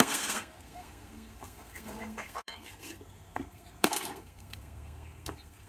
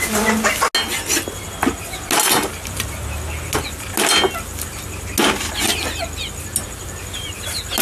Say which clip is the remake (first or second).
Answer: first